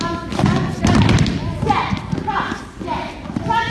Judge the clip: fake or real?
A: real